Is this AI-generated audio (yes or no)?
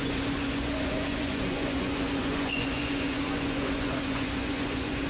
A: yes